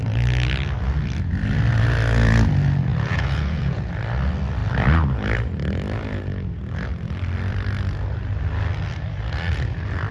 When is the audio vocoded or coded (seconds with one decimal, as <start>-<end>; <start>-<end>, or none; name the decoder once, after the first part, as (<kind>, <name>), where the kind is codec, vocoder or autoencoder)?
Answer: 2.9-3.9 (vocoder, Vocos)